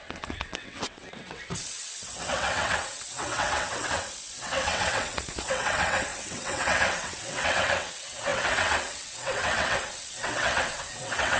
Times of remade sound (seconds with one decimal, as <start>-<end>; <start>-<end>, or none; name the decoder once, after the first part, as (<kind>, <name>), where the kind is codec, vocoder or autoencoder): 0.0-11.4 (vocoder, WaveNeXt)

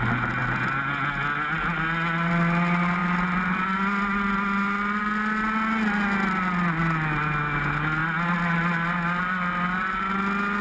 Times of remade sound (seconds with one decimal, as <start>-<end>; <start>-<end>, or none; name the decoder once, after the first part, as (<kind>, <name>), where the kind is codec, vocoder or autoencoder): none

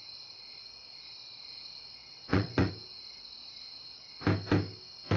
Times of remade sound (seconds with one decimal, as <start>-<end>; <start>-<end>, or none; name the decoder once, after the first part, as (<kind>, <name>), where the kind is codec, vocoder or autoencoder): 2.0-2.7 (vocoder, WaveNeXt)

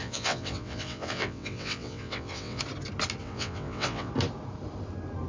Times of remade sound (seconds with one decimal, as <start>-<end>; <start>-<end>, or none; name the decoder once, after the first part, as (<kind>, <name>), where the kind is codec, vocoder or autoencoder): 0.0-2.6 (vocoder, WaveNeXt); 3.2-4.1

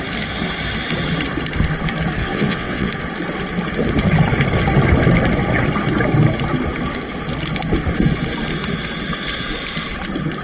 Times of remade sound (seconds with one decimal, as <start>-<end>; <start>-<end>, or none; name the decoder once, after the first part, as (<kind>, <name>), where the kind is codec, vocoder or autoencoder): 2.2-2.9 (vocoder, WaveNeXt)